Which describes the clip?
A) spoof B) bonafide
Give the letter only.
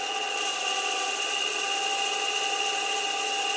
B